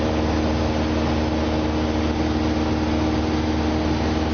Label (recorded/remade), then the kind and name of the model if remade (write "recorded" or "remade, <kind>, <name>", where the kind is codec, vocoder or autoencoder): recorded